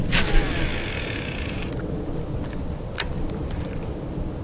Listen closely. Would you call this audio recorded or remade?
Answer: recorded